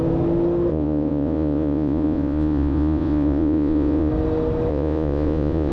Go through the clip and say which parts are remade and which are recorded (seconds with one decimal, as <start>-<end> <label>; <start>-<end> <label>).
0.0-0.7 recorded; 0.7-4.1 remade; 4.1-4.7 recorded; 4.7-5.7 remade

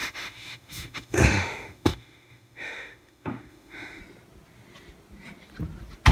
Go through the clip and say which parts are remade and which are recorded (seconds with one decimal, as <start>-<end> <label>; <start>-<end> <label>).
0.0-4.0 remade; 4.0-6.1 recorded

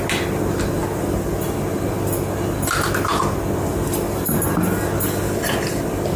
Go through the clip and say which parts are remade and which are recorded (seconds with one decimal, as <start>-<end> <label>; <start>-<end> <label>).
0.0-6.2 recorded